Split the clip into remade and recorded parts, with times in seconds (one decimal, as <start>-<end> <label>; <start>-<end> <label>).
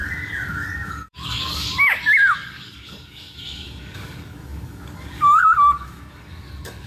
0.0-6.9 remade